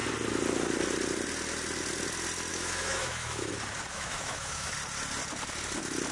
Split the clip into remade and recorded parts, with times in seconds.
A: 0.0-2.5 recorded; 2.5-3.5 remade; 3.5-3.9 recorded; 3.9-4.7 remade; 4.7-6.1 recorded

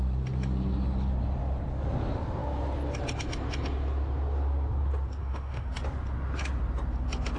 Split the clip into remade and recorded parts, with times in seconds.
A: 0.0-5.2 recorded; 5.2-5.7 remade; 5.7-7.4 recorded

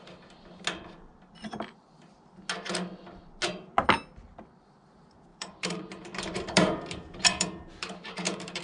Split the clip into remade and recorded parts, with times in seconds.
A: 0.0-5.3 recorded; 5.3-8.6 remade